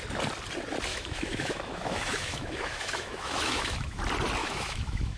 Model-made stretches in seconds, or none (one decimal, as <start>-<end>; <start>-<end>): 0.9-4.0; 4.4-5.2